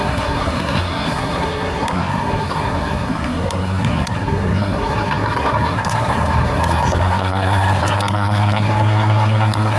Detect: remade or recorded remade